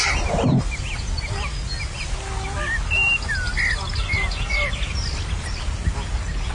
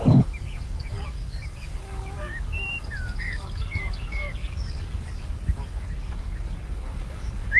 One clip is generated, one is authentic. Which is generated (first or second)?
second